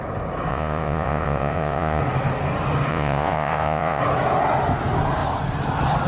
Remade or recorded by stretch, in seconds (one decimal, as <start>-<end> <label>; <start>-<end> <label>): 0.0-0.5 recorded; 0.5-2.0 remade; 2.0-2.9 recorded; 2.9-4.0 remade; 4.0-6.1 recorded